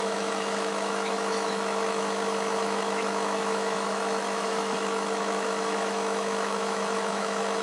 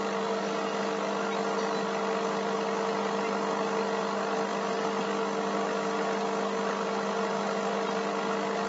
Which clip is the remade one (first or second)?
first